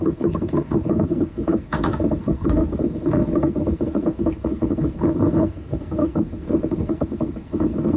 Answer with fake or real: fake